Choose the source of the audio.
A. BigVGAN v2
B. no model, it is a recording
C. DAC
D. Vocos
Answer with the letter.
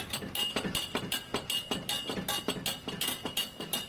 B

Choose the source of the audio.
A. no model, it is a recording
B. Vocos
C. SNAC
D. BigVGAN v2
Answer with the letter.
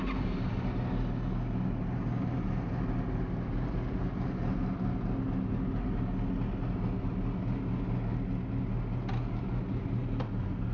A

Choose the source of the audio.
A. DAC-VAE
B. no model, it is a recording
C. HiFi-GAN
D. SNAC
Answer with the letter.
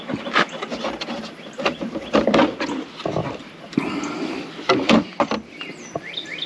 B